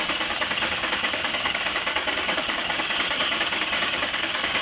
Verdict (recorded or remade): remade